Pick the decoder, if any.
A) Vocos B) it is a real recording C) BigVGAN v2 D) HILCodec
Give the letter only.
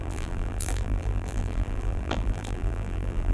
C